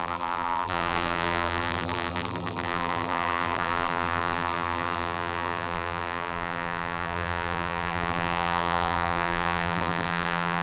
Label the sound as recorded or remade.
remade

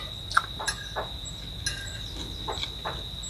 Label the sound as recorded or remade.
recorded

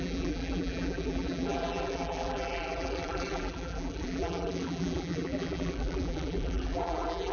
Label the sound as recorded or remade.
remade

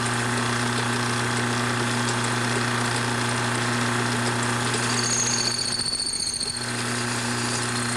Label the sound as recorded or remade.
recorded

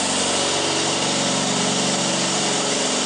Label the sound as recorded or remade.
remade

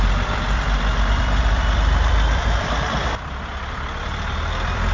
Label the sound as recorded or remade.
remade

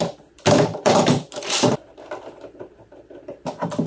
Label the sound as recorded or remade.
remade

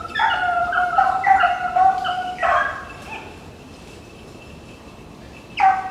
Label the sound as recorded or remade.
recorded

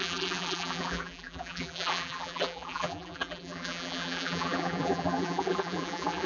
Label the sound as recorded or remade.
remade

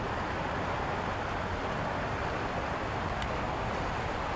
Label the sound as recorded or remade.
recorded